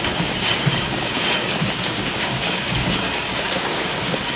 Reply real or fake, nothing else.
fake